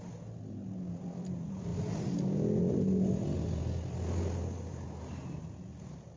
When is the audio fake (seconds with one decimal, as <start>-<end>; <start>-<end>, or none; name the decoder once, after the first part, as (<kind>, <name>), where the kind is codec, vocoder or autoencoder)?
none